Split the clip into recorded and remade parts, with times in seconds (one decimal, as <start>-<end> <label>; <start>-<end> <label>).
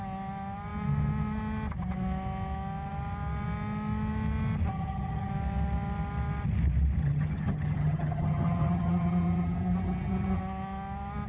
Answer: 0.0-4.7 recorded; 4.7-5.3 remade; 5.3-7.0 recorded; 7.0-10.4 remade; 10.4-11.3 recorded